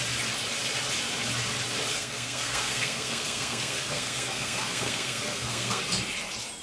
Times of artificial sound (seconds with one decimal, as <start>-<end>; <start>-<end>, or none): 1.9-5.8